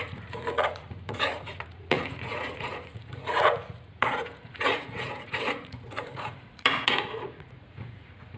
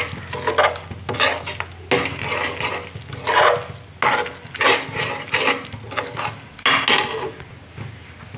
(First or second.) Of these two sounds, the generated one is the first